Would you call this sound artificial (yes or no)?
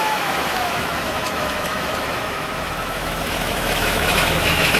yes